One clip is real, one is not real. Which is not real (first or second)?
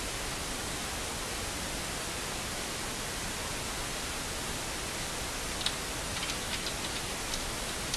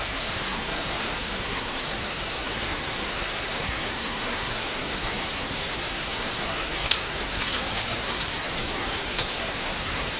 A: second